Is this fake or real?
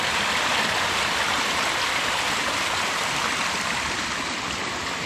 fake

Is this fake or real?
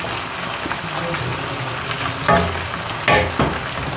real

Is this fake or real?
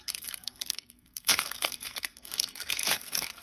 fake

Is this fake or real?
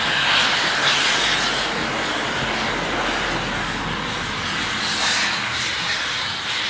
real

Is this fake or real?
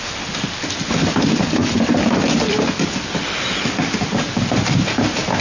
real